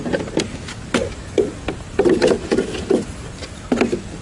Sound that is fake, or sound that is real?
real